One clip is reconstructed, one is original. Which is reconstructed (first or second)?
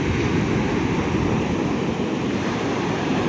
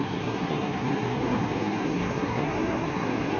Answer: second